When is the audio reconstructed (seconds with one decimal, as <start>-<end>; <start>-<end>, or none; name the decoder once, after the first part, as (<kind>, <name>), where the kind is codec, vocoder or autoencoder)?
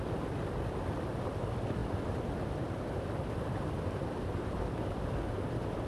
1.8-5.3 (vocoder, BigVGAN v2)